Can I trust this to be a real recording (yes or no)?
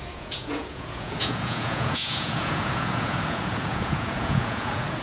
no